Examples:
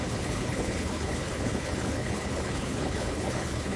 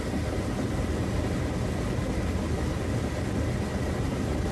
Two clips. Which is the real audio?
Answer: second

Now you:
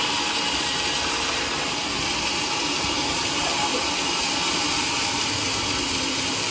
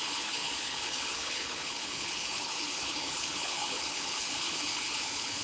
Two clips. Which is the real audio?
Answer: first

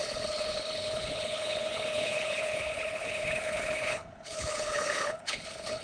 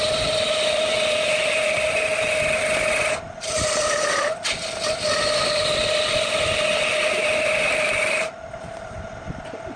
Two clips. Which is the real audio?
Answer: second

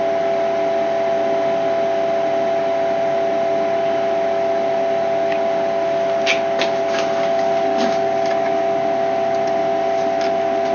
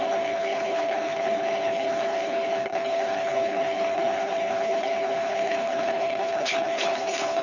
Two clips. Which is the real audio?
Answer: first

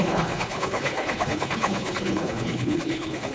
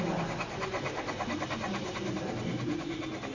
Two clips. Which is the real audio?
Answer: second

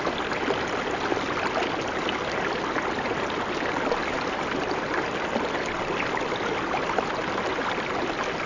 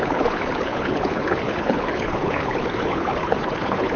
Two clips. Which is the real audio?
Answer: first